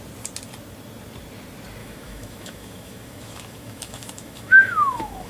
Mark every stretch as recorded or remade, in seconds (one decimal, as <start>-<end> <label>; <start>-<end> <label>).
0.0-1.8 recorded; 1.8-5.3 remade